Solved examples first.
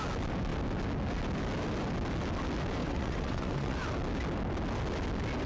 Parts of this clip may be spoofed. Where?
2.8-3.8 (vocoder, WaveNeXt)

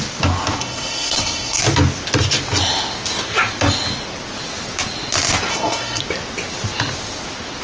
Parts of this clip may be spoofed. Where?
0.6-1.6 (codec, SNAC); 5.5-6.0

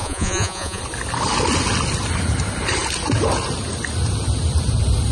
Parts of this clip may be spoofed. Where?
0.0-0.8 (vocoder, Vocos)